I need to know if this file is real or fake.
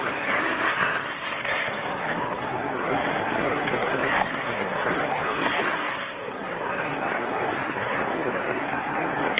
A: fake